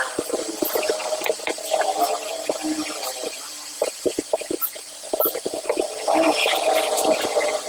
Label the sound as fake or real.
real